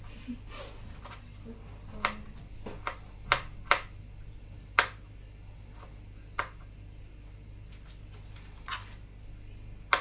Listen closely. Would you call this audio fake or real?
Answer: real